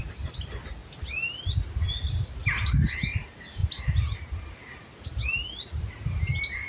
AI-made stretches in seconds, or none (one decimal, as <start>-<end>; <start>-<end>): none